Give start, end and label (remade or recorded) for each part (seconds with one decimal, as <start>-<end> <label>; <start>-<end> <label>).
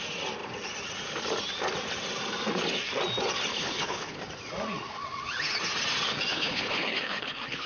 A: 0.0-3.5 recorded; 3.5-4.2 remade; 4.2-6.3 recorded; 6.3-7.7 remade